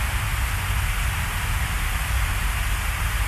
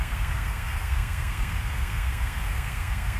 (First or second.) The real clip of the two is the first